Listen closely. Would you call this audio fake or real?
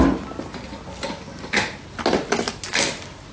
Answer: real